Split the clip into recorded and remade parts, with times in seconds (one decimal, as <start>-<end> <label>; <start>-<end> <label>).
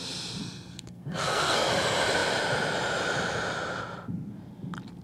0.0-0.4 recorded; 0.4-1.7 remade; 1.7-5.0 recorded